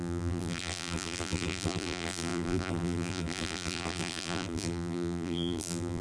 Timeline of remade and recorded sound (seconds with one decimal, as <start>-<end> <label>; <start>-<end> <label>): 0.0-6.0 remade